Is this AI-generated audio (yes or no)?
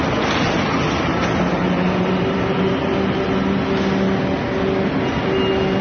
no